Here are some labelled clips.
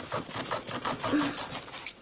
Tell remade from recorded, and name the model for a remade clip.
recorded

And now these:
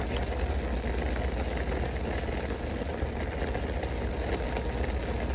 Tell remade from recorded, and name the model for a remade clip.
recorded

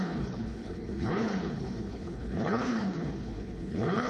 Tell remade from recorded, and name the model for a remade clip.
remade, codec, HILCodec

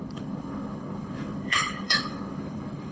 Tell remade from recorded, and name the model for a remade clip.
remade, codec, HILCodec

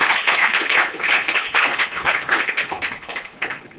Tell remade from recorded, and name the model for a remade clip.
remade, codec, HILCodec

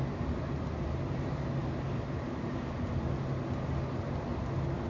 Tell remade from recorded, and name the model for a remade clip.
recorded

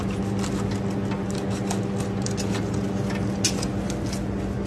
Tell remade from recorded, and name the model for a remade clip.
recorded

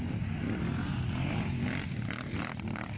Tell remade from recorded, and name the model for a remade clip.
recorded